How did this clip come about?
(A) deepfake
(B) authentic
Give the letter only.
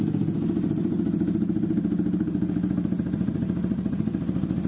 A